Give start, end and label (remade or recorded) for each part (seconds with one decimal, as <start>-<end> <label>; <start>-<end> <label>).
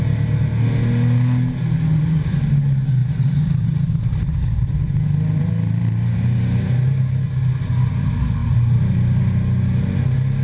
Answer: 0.0-2.0 recorded; 2.0-2.5 remade; 2.5-3.0 recorded; 3.0-7.2 remade; 7.2-10.4 recorded